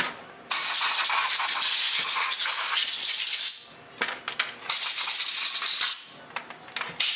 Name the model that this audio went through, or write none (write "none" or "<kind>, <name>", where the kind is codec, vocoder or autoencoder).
none